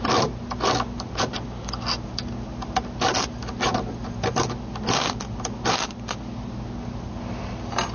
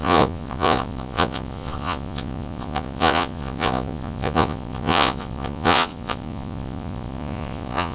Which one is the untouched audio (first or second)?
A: first